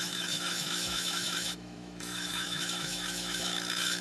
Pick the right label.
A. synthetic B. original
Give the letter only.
A